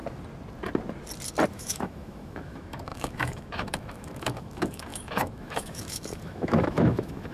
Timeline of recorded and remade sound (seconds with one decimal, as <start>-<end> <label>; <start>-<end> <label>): 0.0-1.5 recorded; 1.5-7.3 remade